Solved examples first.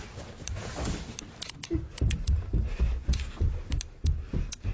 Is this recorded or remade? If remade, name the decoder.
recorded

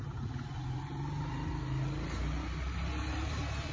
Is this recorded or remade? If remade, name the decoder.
recorded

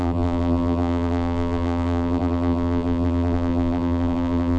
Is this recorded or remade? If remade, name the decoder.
remade, vocoder, BigVGAN v2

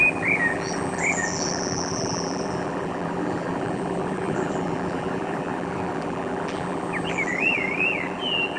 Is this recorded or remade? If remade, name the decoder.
remade, vocoder, BigVGAN v2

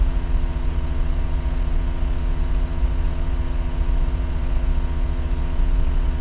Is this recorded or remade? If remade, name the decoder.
remade, vocoder, Vocos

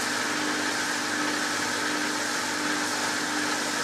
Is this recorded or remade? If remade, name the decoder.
recorded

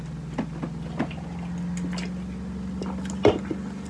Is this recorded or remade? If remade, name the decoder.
recorded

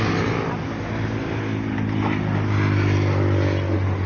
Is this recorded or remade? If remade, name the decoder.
recorded